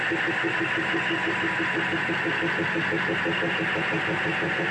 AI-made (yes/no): no